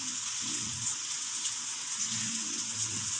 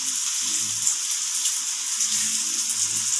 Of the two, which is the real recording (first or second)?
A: second